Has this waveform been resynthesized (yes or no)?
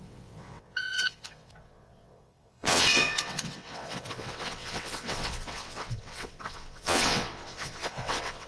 yes